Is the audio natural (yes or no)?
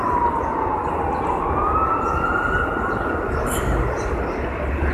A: yes